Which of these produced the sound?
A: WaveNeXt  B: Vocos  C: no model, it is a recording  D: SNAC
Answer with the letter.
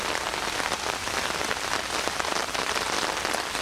C